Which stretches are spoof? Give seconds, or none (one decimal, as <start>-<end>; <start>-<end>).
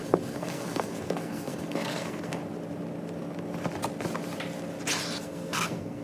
0.0-2.4; 5.2-6.0